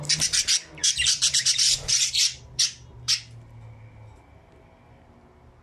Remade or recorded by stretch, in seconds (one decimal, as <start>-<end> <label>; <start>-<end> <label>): 0.0-0.8 recorded; 0.8-4.2 remade; 4.2-5.6 recorded